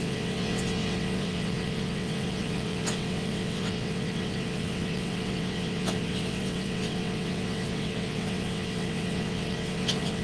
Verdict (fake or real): fake